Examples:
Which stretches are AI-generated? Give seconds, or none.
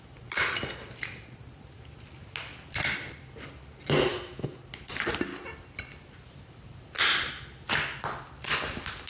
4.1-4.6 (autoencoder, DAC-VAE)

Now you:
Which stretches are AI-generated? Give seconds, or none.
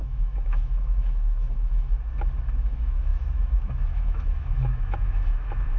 0.0-1.9 (autoencoder, DAC-VAE); 2.7-5.8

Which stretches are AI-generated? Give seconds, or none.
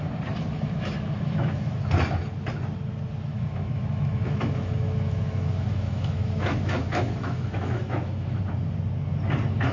0.5-1.8 (autoencoder, DAC-VAE); 3.3-8.4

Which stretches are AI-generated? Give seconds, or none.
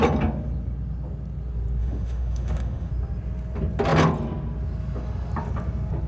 1.8-2.9 (autoencoder, DAC-VAE)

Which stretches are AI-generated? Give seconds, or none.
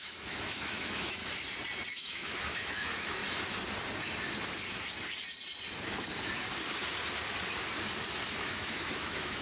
0.0-1.2 (autoencoder, DAC-VAE); 1.9-3.2; 8.4-9.4